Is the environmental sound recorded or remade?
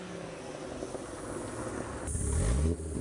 recorded